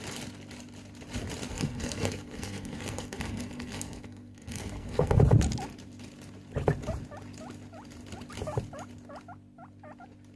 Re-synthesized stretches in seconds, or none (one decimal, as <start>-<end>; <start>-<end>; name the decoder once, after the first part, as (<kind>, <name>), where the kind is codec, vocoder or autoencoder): 1.5-5.2 (codec, SNAC)